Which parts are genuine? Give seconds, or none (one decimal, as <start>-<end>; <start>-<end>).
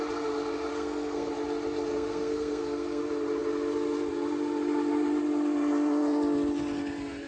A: 0.0-0.7; 1.3-1.9; 3.0-7.3